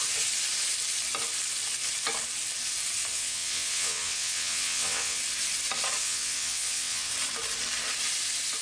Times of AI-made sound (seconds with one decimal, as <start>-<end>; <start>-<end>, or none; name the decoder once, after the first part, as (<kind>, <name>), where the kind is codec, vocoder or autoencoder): 3.1-5.2 (vocoder, WaveNeXt); 6.0-7.1